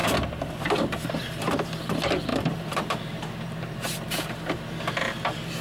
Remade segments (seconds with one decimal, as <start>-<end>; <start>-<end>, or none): 2.3-4.3